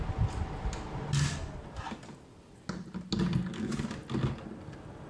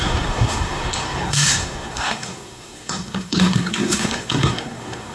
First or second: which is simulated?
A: second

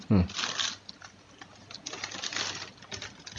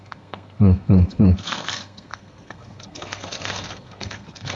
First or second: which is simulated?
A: second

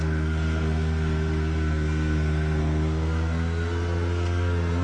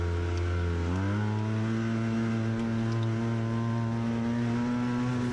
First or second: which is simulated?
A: first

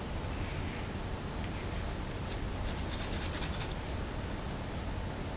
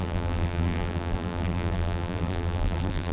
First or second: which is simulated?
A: second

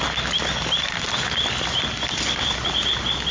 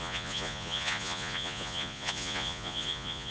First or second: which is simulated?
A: second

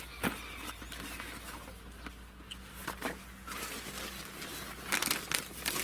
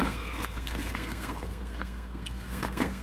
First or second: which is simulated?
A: second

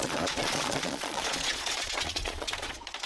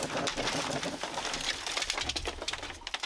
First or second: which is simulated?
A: first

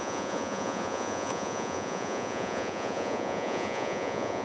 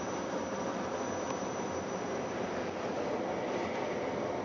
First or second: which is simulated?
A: first